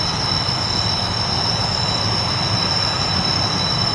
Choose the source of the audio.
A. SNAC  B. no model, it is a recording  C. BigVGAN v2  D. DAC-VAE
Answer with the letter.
B